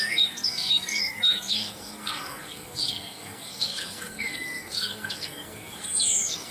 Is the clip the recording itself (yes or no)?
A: no